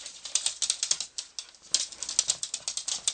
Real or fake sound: real